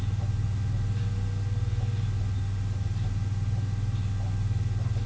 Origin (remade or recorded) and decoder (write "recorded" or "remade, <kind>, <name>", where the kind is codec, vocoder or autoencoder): recorded